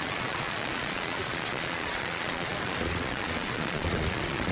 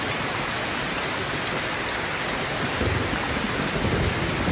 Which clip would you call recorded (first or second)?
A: second